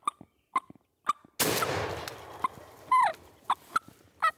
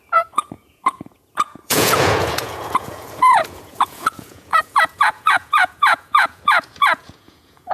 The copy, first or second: second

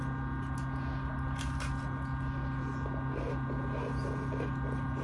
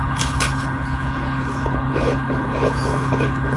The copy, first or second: second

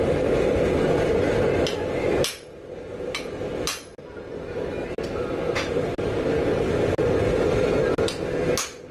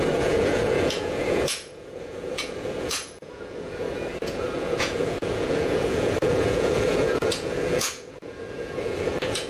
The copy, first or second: second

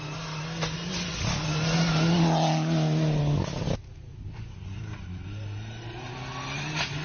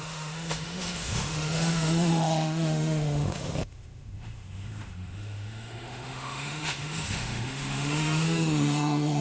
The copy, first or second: second